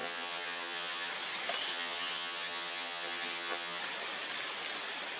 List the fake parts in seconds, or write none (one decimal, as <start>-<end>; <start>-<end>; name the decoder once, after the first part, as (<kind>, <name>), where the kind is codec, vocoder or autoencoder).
0.0-1.1 (vocoder, HiFi-GAN); 1.7-3.8